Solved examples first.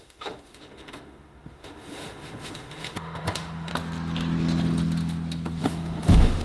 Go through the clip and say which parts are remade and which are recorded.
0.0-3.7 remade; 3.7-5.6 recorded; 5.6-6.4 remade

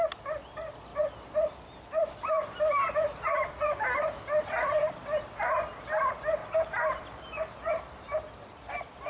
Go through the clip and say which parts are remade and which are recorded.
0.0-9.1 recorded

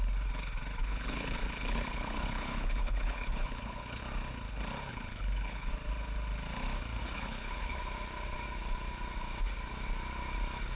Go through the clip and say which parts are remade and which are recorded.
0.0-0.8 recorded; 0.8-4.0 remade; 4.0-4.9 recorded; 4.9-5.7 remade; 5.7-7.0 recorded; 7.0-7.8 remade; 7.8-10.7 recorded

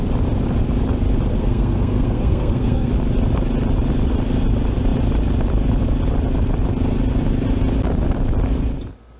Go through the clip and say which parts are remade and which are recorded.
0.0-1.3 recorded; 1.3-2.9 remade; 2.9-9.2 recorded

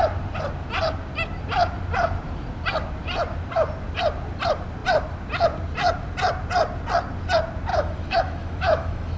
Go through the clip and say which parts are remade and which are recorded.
0.0-7.7 recorded; 7.7-9.2 remade